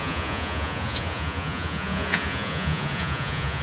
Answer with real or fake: fake